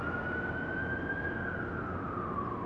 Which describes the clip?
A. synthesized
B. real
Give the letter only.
B